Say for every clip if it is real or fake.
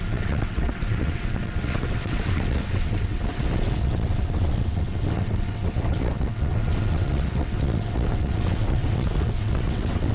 fake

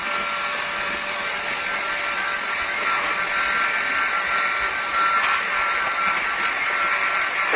real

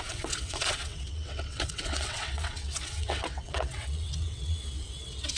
fake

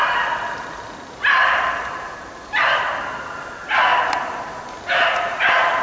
real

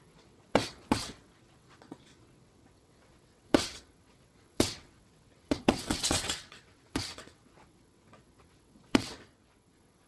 fake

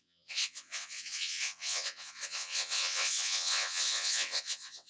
fake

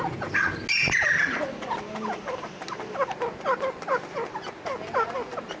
real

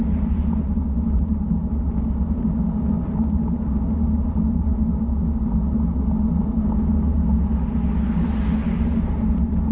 real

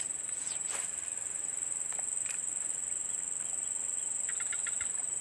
real